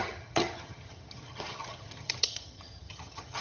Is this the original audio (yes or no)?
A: no